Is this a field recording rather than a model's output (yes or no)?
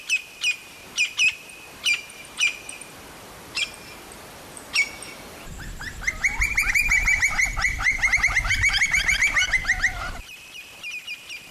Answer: no